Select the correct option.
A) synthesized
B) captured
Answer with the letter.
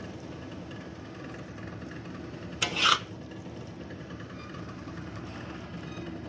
B